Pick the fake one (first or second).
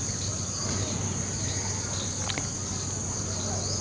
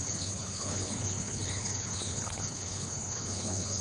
second